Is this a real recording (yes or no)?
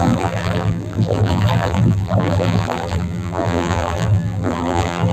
no